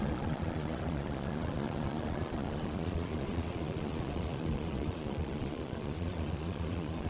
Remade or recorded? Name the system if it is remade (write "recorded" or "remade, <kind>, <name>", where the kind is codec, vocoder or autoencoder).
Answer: remade, vocoder, Vocos